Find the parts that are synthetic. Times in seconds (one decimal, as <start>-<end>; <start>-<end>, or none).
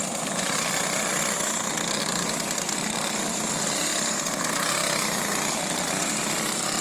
0.0-1.1; 2.8-3.9; 5.5-6.8